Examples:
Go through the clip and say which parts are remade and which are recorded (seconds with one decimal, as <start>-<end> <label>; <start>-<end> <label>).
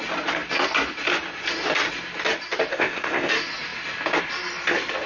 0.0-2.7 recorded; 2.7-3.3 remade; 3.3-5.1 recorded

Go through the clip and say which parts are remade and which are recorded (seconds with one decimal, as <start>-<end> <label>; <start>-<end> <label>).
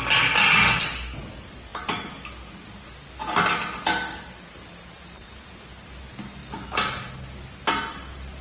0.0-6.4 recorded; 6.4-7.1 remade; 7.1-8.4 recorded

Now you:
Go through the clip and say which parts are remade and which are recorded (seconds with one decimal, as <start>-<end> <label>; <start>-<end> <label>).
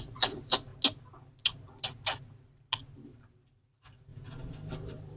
0.0-0.7 remade; 0.7-3.6 recorded; 3.6-4.1 remade; 4.1-4.7 recorded; 4.7-5.2 remade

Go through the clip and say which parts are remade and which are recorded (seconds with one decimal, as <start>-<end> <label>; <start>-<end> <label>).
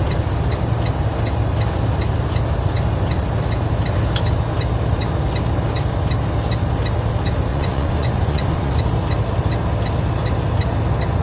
0.0-7.5 recorded; 7.5-8.8 remade; 8.8-11.2 recorded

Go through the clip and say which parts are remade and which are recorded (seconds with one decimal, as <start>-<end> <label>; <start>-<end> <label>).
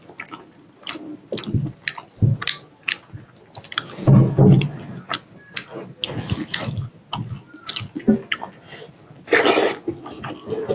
0.0-10.7 recorded